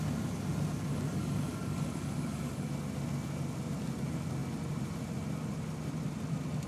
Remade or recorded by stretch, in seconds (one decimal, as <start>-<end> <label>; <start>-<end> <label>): 0.0-0.9 recorded; 0.9-2.7 remade; 2.7-6.7 recorded